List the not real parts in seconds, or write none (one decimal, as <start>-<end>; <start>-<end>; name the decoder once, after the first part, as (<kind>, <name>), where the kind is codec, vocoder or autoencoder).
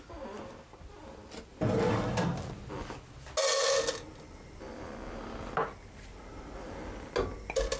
none